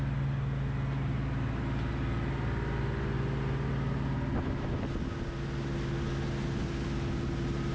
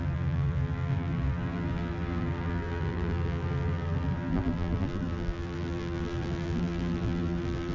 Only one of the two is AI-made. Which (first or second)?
second